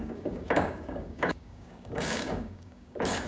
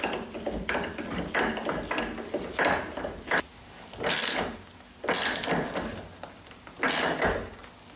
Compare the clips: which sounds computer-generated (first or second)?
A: first